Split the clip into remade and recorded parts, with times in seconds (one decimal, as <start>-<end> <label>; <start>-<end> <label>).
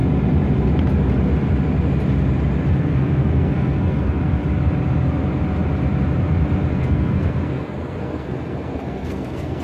0.0-2.8 recorded; 2.8-4.4 remade; 4.4-6.7 recorded; 6.7-9.6 remade